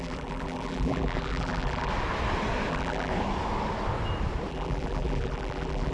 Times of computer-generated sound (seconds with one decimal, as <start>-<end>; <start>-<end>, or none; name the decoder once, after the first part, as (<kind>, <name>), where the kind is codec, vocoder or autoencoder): 0.0-1.9 (vocoder, BigVGAN v2); 2.7-3.1; 4.5-5.9